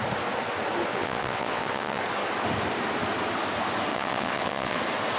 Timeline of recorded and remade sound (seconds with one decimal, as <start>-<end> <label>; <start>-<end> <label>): 0.0-0.9 recorded; 0.9-2.0 remade; 2.0-3.9 recorded; 3.9-4.8 remade; 4.8-5.2 recorded